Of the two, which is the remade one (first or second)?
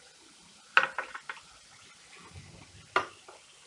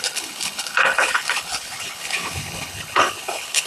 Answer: second